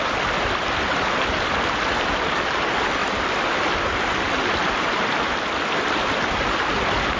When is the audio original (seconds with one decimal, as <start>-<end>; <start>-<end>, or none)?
0.0-3.0